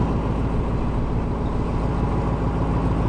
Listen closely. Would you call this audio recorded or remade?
recorded